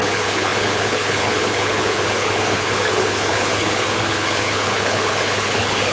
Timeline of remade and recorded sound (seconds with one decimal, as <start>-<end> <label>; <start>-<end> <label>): 0.0-5.9 remade